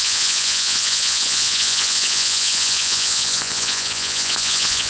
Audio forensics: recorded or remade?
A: remade